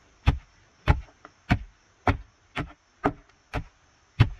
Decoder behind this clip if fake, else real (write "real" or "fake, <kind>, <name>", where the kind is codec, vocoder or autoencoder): real